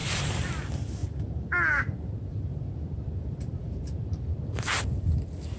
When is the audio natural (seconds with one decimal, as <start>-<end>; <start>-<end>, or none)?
0.5-1.0; 4.4-5.6

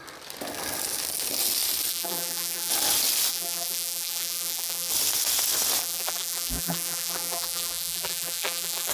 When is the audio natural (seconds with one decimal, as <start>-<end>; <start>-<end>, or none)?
0.0-1.9; 2.7-3.3; 4.9-5.8

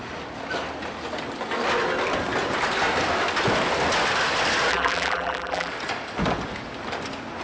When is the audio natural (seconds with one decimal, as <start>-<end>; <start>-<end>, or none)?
0.0-4.7; 5.7-7.4

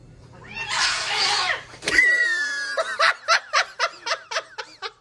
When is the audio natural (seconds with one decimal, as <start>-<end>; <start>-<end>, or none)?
0.0-0.7; 2.2-4.6